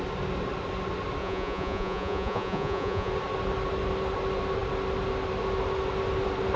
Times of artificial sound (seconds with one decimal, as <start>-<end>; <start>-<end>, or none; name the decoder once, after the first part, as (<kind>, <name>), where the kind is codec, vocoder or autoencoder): 1.2-3.1 (vocoder, Vocos)